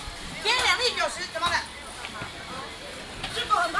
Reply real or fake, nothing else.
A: real